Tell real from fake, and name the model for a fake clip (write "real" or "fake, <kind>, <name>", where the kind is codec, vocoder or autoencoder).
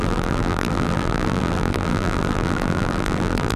fake, vocoder, BigVGAN v2